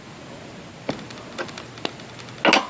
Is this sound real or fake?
real